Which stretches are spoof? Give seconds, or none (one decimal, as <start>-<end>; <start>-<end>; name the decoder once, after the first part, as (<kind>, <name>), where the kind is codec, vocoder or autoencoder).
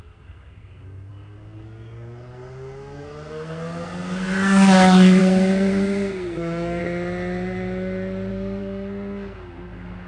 0.0-6.8 (codec, SNAC); 8.3-10.1